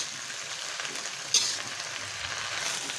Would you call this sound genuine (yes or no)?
no